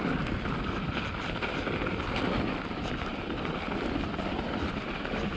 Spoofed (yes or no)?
no